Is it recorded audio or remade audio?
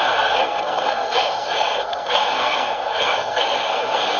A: remade